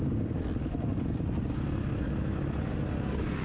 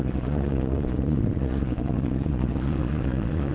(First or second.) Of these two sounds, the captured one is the first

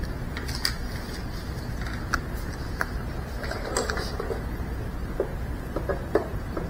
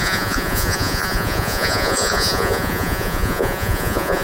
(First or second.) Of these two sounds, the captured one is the first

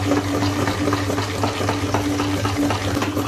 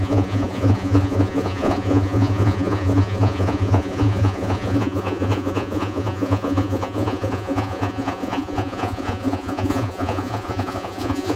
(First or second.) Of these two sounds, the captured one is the first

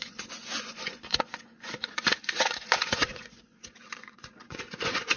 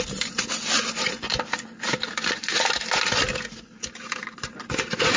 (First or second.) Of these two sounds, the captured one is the second